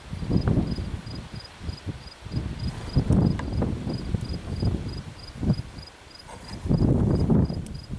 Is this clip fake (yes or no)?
no